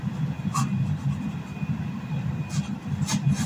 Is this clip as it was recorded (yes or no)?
yes